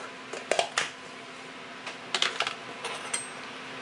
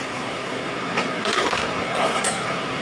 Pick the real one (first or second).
first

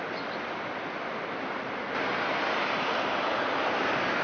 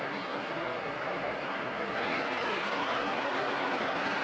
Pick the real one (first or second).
first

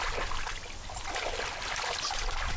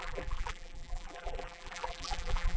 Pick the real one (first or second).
first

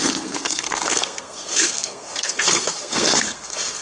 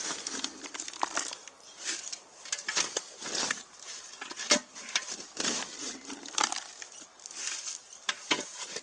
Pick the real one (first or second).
second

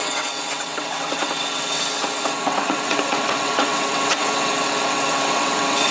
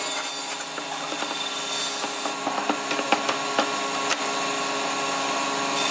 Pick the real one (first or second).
second